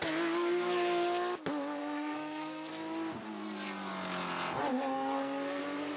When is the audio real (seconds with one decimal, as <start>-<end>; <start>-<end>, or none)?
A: 0.0-1.8; 2.7-4.7; 5.6-6.0